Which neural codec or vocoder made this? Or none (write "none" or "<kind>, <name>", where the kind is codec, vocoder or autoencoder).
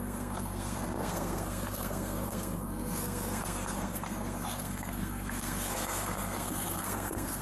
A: codec, SNAC